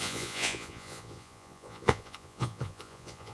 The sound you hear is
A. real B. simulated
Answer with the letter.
B